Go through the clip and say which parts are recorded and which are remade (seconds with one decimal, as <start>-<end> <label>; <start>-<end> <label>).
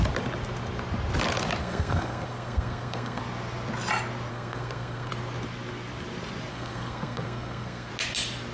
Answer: 0.0-1.6 recorded; 1.6-3.2 remade; 3.2-4.3 recorded; 4.3-5.1 remade; 5.1-6.5 recorded; 6.5-7.9 remade; 7.9-8.5 recorded